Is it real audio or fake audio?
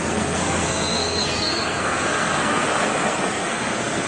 fake